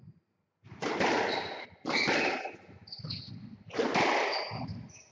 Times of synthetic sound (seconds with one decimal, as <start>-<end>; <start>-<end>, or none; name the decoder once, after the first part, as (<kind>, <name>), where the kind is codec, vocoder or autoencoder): none